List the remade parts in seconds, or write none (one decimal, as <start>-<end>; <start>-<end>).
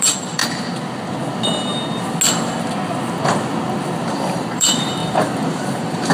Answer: 0.0-0.4; 4.1-6.1